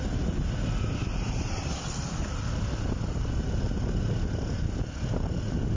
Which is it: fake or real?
real